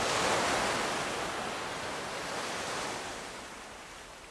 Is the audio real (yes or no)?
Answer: yes